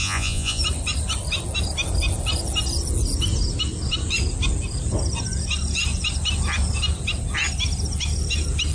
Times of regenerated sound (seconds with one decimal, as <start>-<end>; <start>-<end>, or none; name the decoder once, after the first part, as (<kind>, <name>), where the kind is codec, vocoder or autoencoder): 0.0-0.6 (vocoder, Vocos)

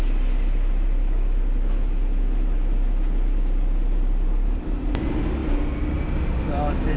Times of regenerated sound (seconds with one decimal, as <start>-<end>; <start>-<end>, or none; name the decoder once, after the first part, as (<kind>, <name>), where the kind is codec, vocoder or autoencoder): none